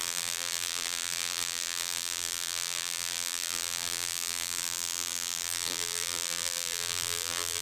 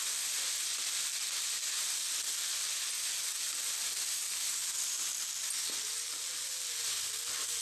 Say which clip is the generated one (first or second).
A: first